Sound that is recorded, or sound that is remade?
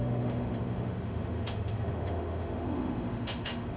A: remade